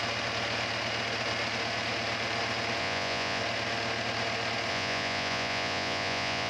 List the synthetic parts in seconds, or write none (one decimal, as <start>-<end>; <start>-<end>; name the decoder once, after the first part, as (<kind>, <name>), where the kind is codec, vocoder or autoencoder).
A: 2.8-3.4 (vocoder, Vocos); 4.7-6.5